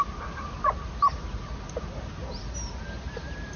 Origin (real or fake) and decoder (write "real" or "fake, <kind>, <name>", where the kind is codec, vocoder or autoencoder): real